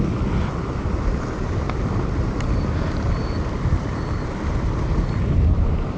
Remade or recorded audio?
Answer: recorded